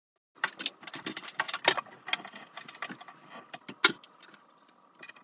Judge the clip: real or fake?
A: real